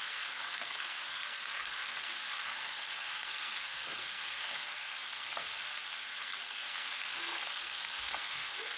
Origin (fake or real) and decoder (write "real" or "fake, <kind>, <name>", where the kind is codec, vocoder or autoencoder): fake, codec, SNAC